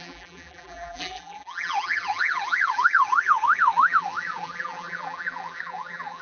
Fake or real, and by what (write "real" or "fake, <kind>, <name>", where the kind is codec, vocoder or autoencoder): fake, vocoder, BigVGAN v2